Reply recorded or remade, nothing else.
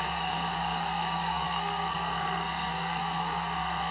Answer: remade